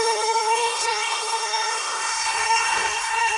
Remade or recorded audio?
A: remade